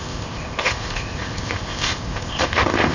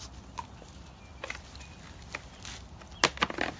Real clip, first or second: second